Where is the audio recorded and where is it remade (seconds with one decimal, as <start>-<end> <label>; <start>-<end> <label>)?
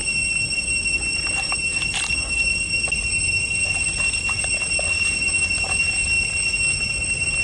0.0-7.4 recorded